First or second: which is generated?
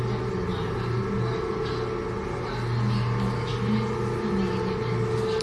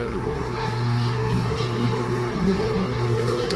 second